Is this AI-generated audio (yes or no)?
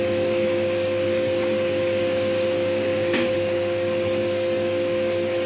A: yes